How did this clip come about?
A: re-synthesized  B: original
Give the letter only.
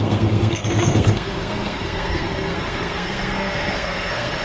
A